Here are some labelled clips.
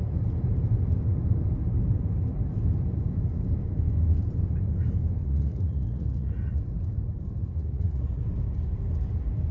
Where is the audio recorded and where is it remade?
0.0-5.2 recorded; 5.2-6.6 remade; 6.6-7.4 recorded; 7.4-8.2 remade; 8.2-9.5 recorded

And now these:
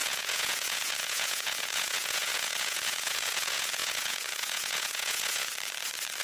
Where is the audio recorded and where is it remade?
0.0-5.5 remade; 5.5-6.2 recorded

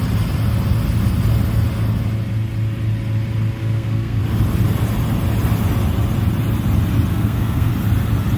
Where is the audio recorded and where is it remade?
0.0-3.6 recorded; 3.6-4.2 remade; 4.2-7.1 recorded; 7.1-7.7 remade; 7.7-8.4 recorded

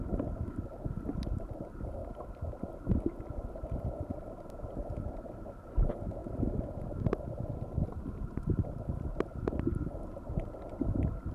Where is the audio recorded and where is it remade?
0.0-11.3 recorded

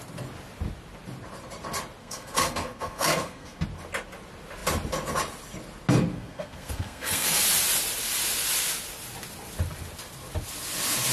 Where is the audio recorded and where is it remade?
0.0-2.0 recorded; 2.0-3.6 remade; 3.6-6.1 recorded; 6.1-7.4 remade; 7.4-11.1 recorded

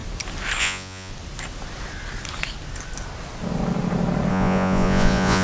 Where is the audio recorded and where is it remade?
0.0-0.6 recorded; 0.6-1.1 remade; 1.1-4.3 recorded; 4.3-5.4 remade